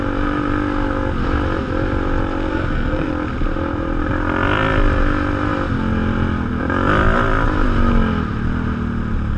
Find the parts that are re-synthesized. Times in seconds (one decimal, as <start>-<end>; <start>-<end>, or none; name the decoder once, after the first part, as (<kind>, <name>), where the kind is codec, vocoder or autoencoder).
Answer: 2.5-3.1 (codec, SNAC)